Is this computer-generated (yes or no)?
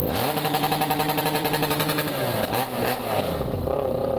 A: yes